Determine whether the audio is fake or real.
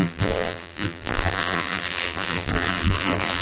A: fake